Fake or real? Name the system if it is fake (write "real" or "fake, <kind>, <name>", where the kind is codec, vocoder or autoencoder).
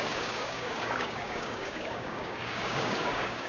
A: fake, codec, DAC